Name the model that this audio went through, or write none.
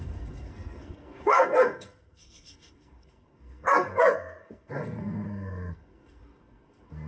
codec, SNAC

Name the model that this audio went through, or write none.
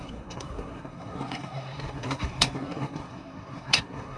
codec, SNAC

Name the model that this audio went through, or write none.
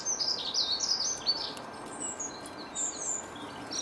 none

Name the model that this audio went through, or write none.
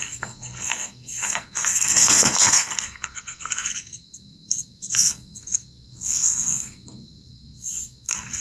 codec, SNAC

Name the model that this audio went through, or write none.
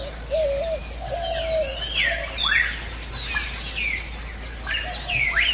none